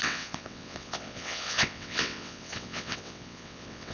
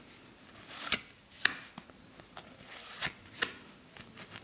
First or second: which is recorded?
second